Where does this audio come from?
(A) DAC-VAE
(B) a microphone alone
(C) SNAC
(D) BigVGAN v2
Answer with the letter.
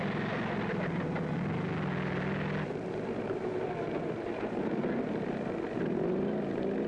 B